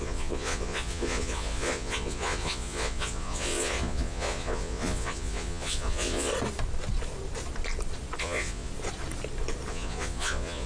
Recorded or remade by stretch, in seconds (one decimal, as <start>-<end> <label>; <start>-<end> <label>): 0.0-6.3 remade; 6.3-8.2 recorded; 8.2-8.7 remade; 8.7-9.7 recorded; 9.7-10.7 remade